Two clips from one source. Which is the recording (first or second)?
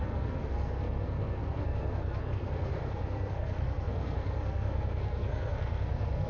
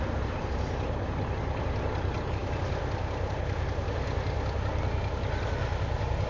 second